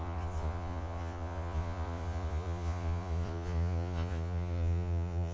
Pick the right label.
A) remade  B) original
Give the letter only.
A